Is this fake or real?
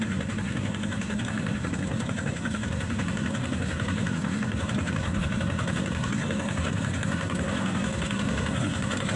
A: fake